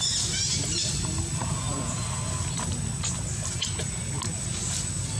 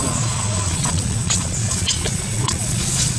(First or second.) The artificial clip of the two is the second